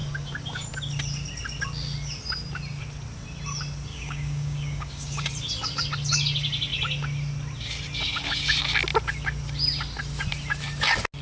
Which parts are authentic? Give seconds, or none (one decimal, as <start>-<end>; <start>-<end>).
0.0-3.9; 5.3-11.2